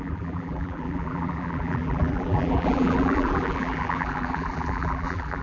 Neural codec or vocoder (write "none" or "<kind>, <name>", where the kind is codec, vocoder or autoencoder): vocoder, BigVGAN v2